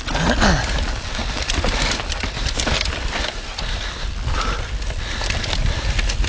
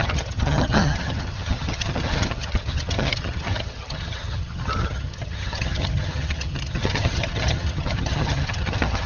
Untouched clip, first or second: first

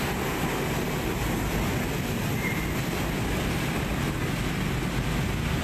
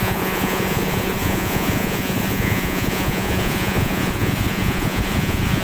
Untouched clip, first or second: first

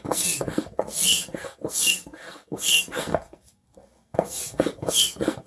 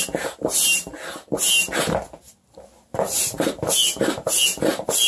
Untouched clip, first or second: second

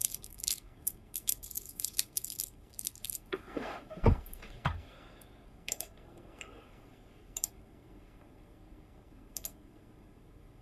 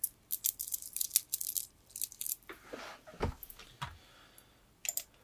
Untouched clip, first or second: second